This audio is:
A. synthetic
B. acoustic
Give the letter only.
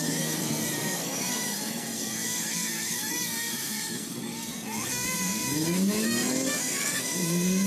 A